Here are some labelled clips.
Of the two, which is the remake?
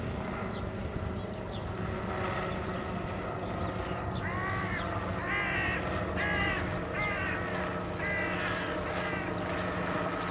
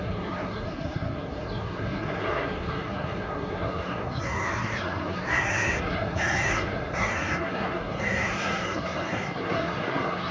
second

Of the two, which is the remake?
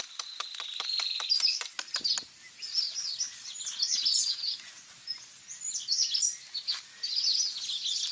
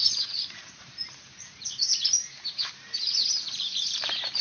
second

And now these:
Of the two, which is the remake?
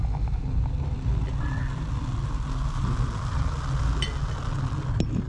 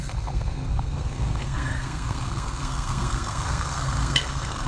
second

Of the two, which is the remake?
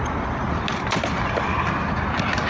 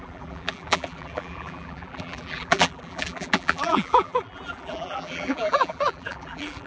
second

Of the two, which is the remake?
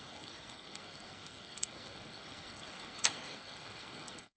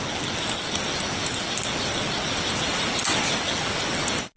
first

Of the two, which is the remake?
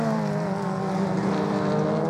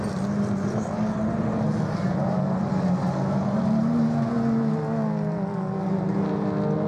first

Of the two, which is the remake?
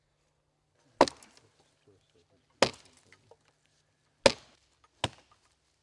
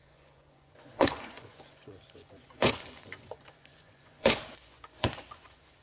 second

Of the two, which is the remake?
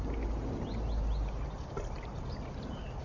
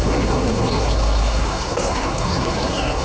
second